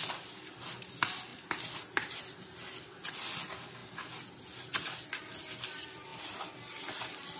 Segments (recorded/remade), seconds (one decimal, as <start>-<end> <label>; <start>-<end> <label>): 0.0-7.4 recorded